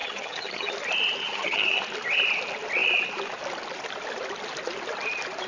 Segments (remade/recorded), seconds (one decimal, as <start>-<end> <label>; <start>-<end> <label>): 0.0-0.7 remade; 0.7-1.2 recorded; 1.2-1.8 remade; 1.8-5.5 recorded